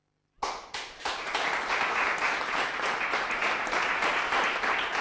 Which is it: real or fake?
real